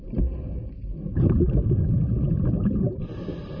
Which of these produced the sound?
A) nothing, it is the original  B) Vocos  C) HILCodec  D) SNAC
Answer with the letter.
A